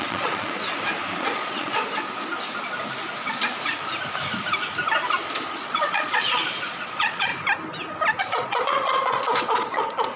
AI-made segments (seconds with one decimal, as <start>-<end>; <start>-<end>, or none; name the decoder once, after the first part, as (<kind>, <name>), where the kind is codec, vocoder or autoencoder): 0.0-0.6 (vocoder, Vocos); 1.2-1.7; 5.5-7.3; 8.2-10.2